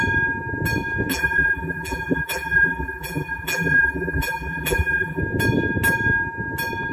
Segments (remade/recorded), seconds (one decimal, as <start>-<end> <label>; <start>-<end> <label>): 0.0-1.1 recorded; 1.1-5.2 remade; 5.2-6.9 recorded